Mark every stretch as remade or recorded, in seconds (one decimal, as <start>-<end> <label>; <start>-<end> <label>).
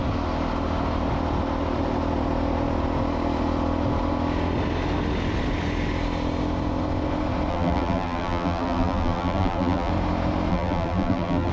0.0-7.5 recorded; 7.5-9.9 remade; 9.9-10.5 recorded; 10.5-11.5 remade